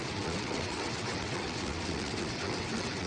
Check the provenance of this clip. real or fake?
fake